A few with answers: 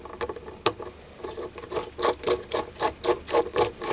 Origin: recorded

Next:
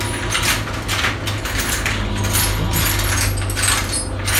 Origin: recorded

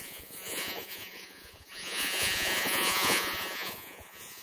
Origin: remade